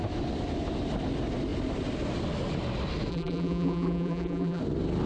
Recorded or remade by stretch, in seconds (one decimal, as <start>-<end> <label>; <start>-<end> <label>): 0.0-3.1 recorded; 3.1-4.6 remade; 4.6-5.1 recorded